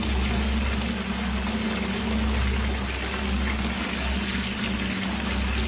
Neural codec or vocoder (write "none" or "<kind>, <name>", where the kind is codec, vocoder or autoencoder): none